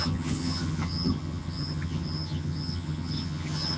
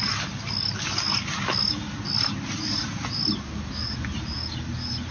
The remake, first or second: first